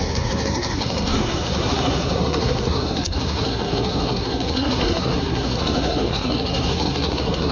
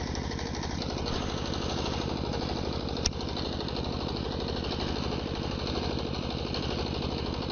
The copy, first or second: first